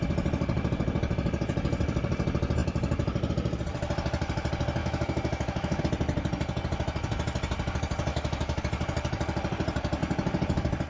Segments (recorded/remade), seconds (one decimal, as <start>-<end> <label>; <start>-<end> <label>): 0.0-4.8 recorded; 4.8-5.8 remade; 5.8-8.1 recorded; 8.1-8.6 remade; 8.6-10.9 recorded